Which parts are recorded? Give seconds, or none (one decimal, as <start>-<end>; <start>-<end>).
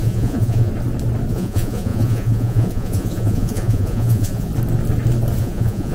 0.7-1.3; 4.5-5.4